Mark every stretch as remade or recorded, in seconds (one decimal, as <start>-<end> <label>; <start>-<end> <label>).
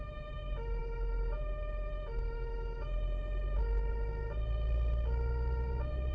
0.0-6.1 recorded